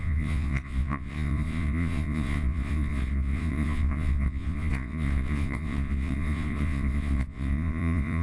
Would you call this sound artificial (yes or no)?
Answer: yes